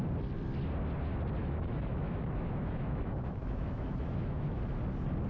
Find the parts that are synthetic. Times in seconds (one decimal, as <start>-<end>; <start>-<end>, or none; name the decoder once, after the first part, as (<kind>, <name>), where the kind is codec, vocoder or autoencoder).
1.4-4.6 (autoencoder, DAC-VAE)